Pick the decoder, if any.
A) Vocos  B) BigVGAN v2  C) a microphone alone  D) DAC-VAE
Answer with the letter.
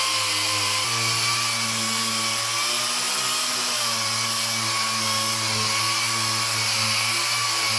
C